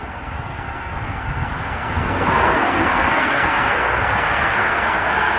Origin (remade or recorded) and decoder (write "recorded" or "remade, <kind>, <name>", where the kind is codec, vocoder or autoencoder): remade, codec, SNAC